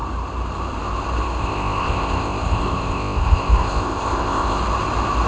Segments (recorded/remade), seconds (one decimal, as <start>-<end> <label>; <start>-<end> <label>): 0.0-1.4 recorded; 1.4-4.6 remade; 4.6-5.3 recorded